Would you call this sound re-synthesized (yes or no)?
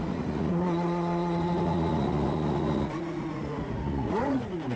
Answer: yes